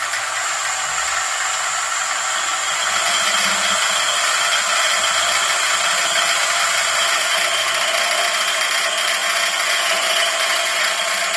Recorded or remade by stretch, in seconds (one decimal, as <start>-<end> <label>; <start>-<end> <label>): 0.0-2.5 recorded; 2.5-3.4 remade; 3.4-9.2 recorded; 9.2-10.8 remade; 10.8-11.4 recorded